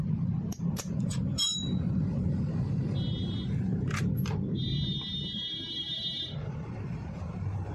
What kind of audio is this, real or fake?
fake